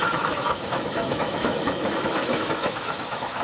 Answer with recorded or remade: remade